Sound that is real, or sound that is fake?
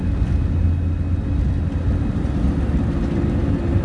real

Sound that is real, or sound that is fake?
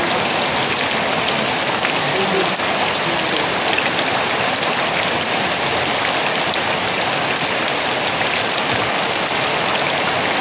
real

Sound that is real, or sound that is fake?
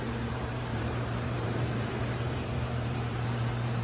fake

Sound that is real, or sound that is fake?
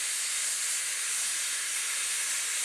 real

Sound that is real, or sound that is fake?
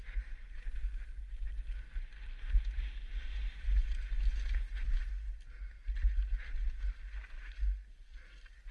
real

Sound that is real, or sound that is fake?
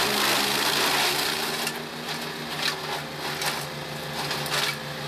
real